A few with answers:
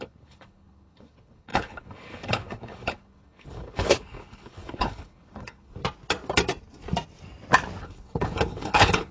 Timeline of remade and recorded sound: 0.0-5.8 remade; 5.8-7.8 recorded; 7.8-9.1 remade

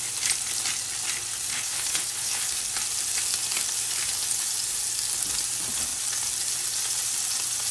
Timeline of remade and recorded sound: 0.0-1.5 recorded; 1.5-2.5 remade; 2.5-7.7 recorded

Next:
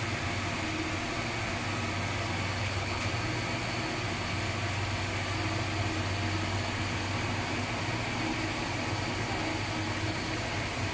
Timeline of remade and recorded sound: 0.0-2.6 recorded; 2.6-3.1 remade; 3.1-10.9 recorded

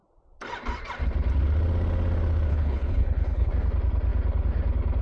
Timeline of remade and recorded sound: 0.0-2.5 recorded; 2.5-3.5 remade; 3.5-5.0 recorded

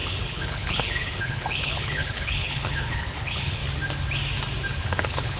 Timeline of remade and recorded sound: 0.0-3.6 remade; 3.6-4.8 recorded; 4.8-5.4 remade

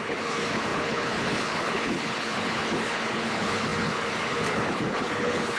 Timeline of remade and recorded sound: 0.0-5.6 remade

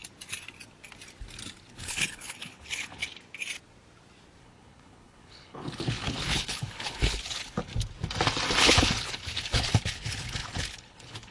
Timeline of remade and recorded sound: 0.0-1.7 recorded; 1.7-3.1 remade; 3.1-4.4 recorded; 4.4-7.7 remade; 7.7-8.6 recorded; 8.6-11.3 remade